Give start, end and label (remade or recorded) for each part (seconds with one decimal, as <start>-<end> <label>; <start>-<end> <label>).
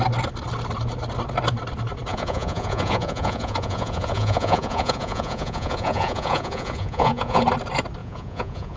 0.0-2.1 recorded; 2.1-7.4 remade; 7.4-8.0 recorded; 8.0-8.8 remade